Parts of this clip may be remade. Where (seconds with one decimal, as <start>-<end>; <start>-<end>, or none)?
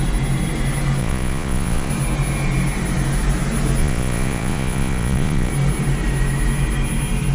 1.0-1.9; 3.8-5.5